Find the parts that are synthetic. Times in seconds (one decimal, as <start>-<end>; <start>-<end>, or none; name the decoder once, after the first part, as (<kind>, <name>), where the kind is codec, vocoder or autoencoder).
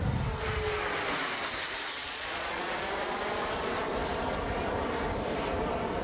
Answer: 2.0-2.7 (vocoder, Vocos)